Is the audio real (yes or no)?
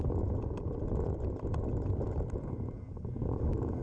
yes